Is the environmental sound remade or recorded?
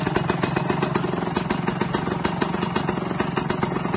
recorded